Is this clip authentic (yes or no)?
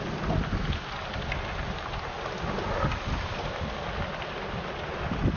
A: yes